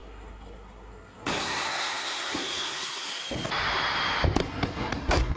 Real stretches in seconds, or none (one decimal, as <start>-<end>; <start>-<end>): 3.2-4.4